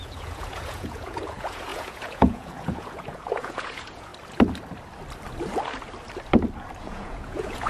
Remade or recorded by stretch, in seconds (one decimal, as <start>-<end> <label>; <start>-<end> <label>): 0.0-4.1 remade; 4.1-6.8 recorded; 6.8-7.7 remade